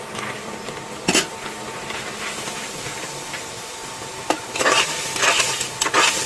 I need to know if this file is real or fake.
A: real